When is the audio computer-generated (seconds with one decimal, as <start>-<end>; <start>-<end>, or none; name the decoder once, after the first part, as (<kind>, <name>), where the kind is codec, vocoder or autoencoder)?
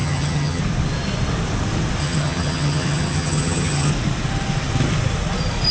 0.0-0.6 (vocoder, HiFi-GAN); 2.0-3.9